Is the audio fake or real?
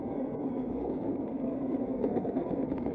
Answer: fake